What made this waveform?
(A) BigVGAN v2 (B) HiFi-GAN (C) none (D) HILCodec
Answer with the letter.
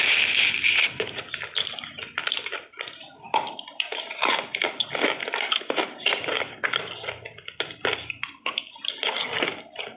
A